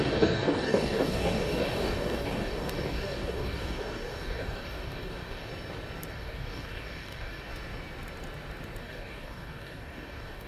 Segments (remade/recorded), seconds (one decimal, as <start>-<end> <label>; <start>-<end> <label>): 0.0-5.5 remade; 5.5-6.1 recorded; 6.1-7.5 remade; 7.5-8.8 recorded; 8.8-10.5 remade